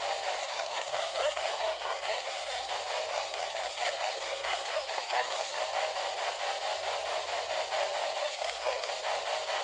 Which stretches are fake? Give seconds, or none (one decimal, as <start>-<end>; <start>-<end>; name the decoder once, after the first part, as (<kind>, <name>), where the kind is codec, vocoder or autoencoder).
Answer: 0.4-2.7 (codec, SNAC); 3.1-5.6; 8.2-8.9